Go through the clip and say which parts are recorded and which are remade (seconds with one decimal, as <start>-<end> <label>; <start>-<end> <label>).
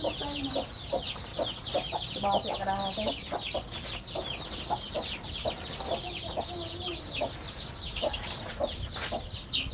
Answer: 0.0-9.7 recorded